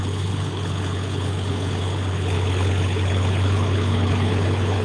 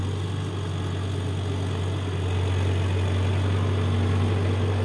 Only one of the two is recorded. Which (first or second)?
second